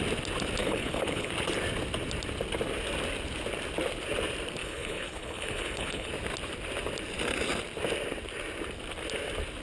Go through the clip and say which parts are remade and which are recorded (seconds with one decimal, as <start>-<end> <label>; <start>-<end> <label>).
0.0-0.6 recorded; 0.6-1.3 remade; 1.3-4.6 recorded; 4.6-6.1 remade; 6.1-9.6 recorded